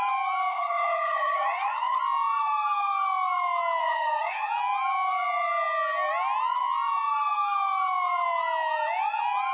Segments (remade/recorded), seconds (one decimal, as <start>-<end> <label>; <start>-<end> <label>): 0.0-0.5 recorded; 0.5-2.0 remade; 2.0-3.8 recorded; 3.8-4.5 remade; 4.5-9.5 recorded